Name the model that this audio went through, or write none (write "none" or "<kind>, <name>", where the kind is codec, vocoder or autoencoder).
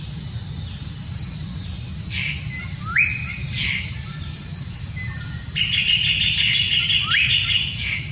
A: none